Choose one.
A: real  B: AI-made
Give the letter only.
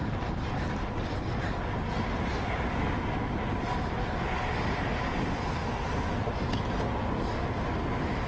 A